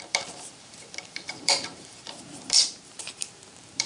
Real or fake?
fake